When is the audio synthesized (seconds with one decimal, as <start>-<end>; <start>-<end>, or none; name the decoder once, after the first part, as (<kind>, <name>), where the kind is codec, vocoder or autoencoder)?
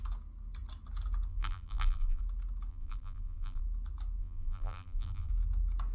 1.3-2.2 (vocoder, BigVGAN v2); 2.7-3.6; 4.2-5.3